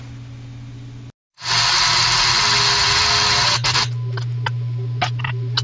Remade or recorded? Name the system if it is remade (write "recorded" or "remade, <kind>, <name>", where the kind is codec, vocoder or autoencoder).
recorded